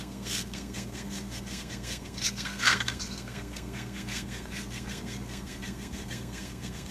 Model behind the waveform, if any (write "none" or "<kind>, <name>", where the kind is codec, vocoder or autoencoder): codec, SNAC